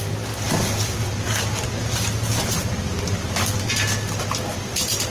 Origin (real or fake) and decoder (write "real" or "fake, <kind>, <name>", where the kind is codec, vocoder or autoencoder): real